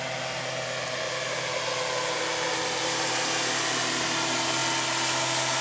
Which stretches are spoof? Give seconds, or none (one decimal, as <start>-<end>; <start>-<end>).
none